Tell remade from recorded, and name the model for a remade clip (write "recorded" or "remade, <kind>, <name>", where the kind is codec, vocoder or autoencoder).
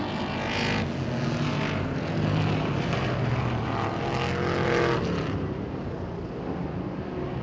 recorded